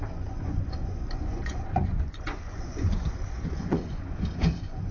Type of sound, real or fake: fake